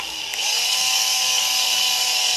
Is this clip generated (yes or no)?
yes